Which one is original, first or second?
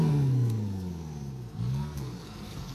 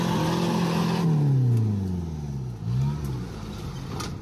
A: second